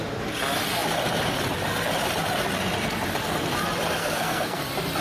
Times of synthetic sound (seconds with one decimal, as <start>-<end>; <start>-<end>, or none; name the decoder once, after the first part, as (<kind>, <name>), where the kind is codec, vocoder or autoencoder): 4.0-4.6 (codec, SNAC)